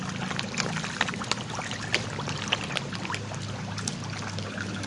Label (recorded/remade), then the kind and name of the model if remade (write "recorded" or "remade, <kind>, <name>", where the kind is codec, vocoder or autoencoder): recorded